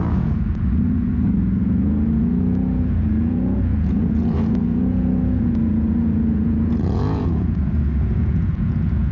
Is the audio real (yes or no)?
no